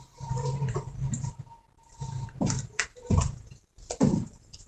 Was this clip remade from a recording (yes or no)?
yes